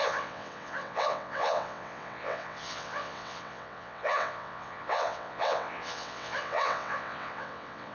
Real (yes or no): no